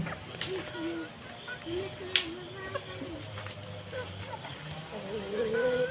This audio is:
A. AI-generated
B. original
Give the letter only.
B